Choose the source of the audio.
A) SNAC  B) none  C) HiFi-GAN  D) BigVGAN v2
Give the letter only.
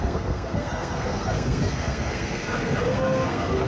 A